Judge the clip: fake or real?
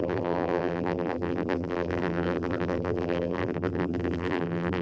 fake